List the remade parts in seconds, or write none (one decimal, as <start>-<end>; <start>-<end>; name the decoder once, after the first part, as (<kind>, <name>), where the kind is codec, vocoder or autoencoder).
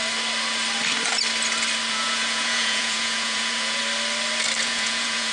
1.9-3.8 (vocoder, Vocos); 4.6-5.3